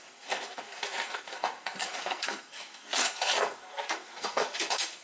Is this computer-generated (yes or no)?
yes